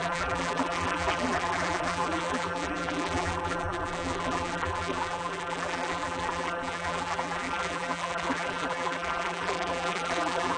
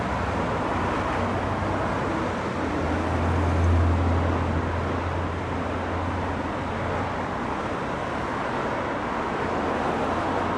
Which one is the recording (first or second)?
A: second